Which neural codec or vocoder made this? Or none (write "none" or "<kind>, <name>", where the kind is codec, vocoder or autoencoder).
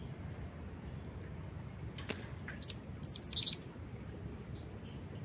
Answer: none